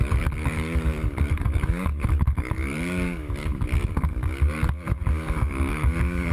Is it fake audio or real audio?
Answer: fake